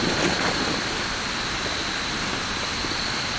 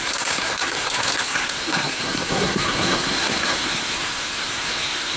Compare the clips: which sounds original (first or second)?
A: first